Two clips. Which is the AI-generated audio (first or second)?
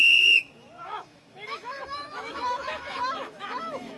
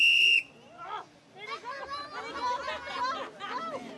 first